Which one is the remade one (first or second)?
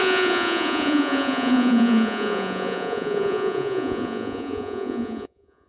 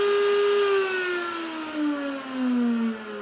first